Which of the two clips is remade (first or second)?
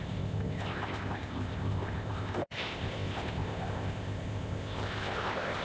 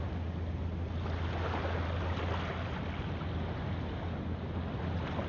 first